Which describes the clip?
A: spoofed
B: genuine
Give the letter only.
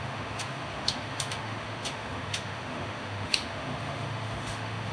A